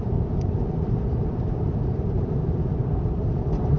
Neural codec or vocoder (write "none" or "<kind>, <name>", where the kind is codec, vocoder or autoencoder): none